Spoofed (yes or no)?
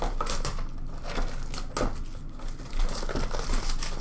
no